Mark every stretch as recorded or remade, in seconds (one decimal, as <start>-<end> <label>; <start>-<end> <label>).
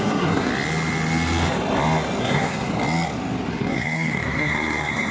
0.0-0.5 remade; 0.5-2.2 recorded; 2.2-2.7 remade; 2.7-3.5 recorded; 3.5-5.1 remade